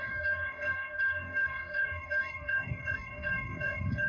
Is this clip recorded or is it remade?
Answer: remade